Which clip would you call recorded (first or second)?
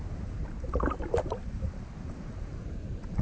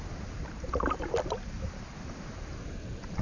second